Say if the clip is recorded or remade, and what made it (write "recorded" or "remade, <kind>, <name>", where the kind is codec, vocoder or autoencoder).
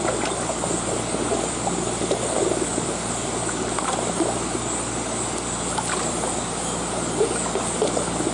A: recorded